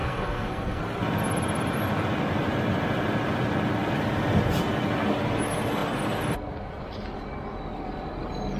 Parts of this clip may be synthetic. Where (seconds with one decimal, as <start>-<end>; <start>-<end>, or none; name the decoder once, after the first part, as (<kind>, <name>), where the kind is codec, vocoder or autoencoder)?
0.0-0.8 (codec, SNAC)